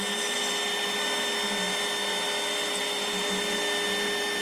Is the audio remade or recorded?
recorded